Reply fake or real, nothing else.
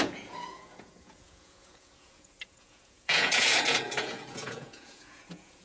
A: fake